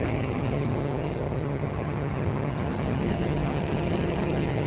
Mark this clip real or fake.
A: fake